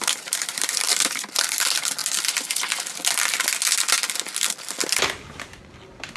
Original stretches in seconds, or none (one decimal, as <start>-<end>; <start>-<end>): 2.0-5.7